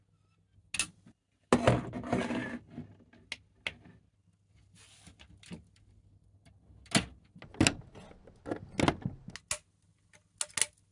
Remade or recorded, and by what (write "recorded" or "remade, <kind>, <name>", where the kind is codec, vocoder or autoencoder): recorded